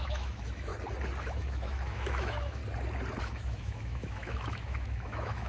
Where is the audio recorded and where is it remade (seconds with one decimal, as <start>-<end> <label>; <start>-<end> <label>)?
0.0-0.7 remade; 0.7-1.2 recorded; 1.2-2.6 remade; 2.6-3.2 recorded; 3.2-5.5 remade